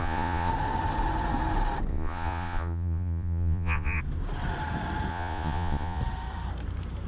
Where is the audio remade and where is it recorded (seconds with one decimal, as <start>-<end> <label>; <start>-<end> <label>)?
0.0-0.5 remade; 0.5-1.9 recorded; 1.9-4.0 remade; 4.0-5.1 recorded; 5.1-6.0 remade; 6.0-7.1 recorded